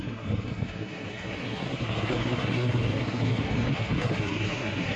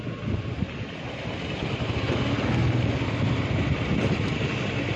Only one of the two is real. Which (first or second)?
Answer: second